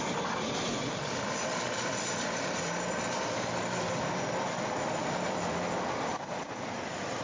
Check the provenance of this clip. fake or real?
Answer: fake